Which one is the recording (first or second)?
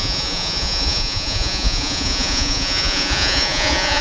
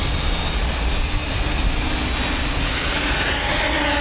second